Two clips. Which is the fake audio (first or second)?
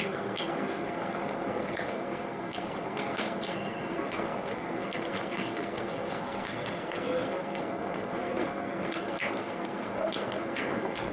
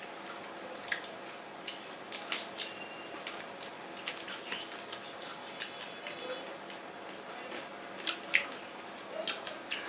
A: first